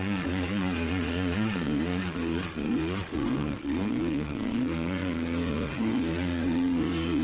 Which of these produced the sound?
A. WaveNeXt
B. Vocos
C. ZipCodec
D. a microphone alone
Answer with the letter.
B